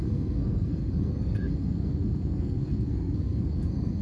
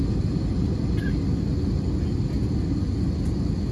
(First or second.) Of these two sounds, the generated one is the first